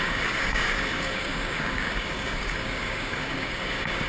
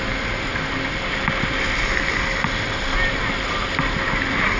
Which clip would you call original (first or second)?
second